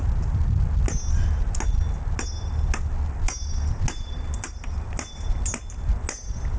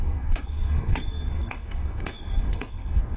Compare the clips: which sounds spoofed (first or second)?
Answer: second